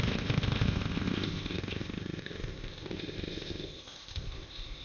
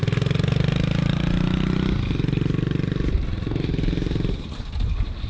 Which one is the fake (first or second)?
first